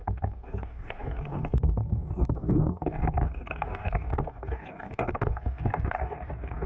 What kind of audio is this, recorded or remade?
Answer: remade